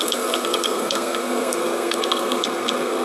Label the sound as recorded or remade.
remade